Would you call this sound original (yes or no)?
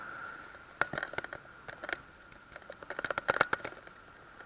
yes